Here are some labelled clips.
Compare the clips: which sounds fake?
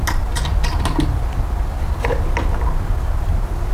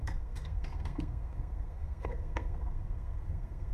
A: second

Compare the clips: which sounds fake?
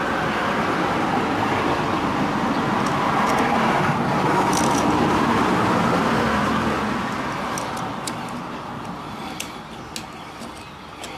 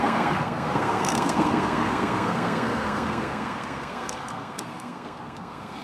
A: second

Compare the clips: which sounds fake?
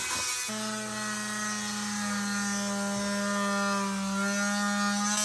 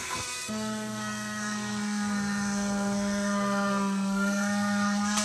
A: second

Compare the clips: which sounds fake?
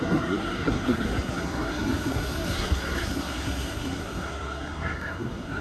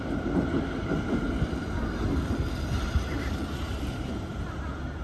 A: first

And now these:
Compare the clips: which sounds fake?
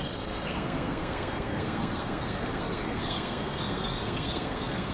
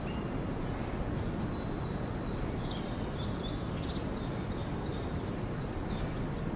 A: first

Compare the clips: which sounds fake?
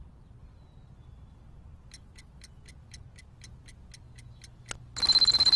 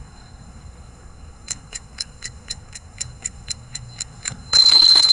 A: second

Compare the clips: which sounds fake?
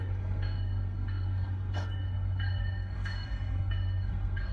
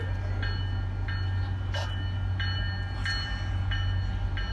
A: first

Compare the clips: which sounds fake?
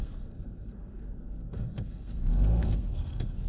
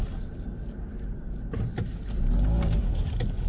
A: first